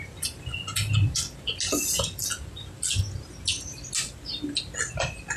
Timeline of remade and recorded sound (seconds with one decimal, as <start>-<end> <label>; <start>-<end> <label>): 0.0-5.4 recorded